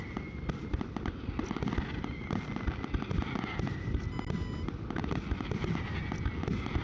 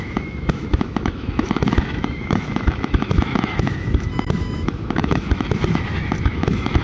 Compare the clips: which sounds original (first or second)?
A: first